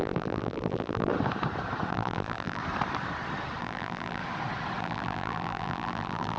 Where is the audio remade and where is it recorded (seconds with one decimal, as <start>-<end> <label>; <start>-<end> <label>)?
0.0-1.1 remade; 1.1-1.9 recorded; 1.9-2.6 remade; 2.6-3.6 recorded; 3.6-4.2 remade; 4.2-4.8 recorded; 4.8-6.4 remade